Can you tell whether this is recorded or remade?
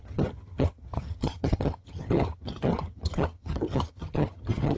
remade